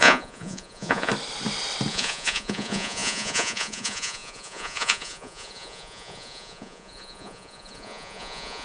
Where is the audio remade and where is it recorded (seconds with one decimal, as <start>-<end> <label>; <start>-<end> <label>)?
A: 0.0-1.1 remade; 1.1-1.9 recorded; 1.9-8.6 remade